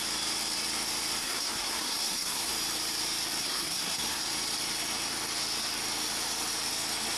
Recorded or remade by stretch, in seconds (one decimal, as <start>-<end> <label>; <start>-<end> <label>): 0.0-1.2 recorded; 1.2-2.5 remade; 2.5-3.4 recorded; 3.4-4.2 remade; 4.2-7.2 recorded